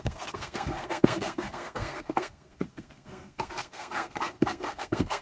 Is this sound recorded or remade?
remade